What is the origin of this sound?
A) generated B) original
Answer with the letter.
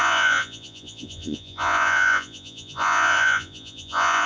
A